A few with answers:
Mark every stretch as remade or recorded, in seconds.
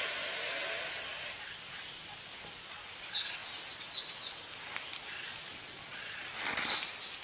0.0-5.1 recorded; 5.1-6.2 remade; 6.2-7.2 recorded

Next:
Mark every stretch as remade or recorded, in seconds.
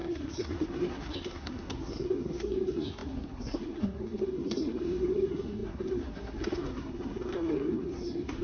0.0-8.4 remade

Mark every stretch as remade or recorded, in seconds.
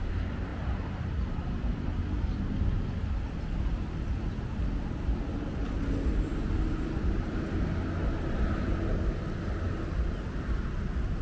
0.0-11.2 recorded